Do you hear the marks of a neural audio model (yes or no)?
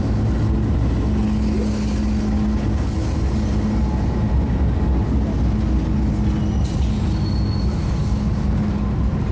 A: no